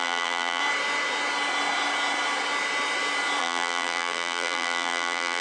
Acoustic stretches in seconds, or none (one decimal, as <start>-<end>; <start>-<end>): 0.6-3.4